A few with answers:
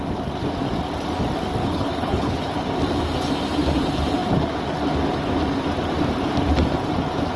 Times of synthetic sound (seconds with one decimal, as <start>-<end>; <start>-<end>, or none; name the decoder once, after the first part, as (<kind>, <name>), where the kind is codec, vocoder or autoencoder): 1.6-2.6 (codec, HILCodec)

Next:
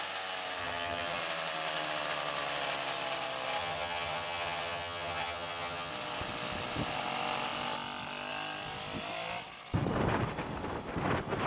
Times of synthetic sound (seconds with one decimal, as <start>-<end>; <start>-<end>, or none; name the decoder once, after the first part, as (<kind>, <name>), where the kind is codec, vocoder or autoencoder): 0.6-1.2 (vocoder, HiFi-GAN); 3.6-5.9

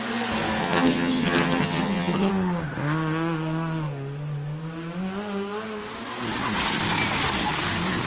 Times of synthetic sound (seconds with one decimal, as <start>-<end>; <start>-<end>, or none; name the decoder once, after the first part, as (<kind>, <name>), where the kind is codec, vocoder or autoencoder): 0.6-2.3 (vocoder, HiFi-GAN)

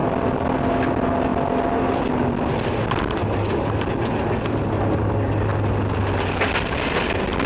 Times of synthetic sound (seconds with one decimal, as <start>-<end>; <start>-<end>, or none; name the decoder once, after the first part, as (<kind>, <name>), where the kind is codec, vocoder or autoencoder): none

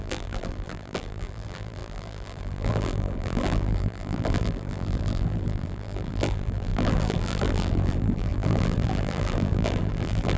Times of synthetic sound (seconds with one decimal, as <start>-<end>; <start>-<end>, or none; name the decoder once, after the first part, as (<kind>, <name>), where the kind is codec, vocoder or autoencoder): 0.0-10.4 (vocoder, BigVGAN v2)